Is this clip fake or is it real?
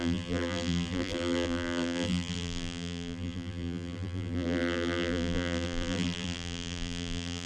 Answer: fake